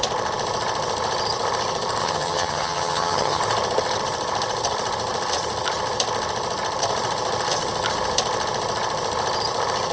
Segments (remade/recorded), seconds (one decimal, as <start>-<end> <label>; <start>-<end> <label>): 0.0-2.0 recorded; 2.0-3.4 remade; 3.4-9.9 recorded